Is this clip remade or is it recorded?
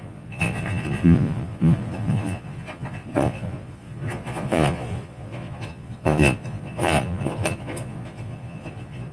remade